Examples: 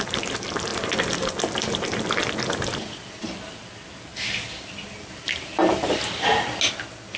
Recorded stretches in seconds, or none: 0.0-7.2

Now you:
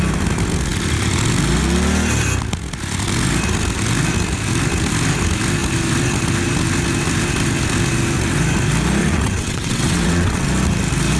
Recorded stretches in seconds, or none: 0.0-9.0; 10.5-11.2

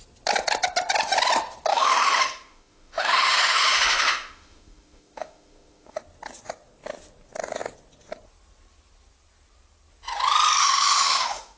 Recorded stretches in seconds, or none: 0.0-1.7; 6.0-10.6